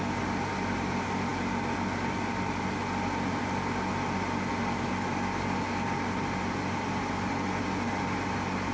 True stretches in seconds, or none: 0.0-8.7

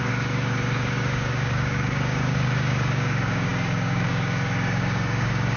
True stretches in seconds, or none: none